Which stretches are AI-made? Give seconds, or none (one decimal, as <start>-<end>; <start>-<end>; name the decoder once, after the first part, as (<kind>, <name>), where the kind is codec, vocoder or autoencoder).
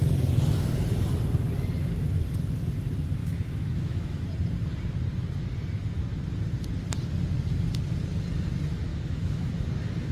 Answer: 3.2-4.2 (autoencoder, DAC-VAE); 8.9-9.5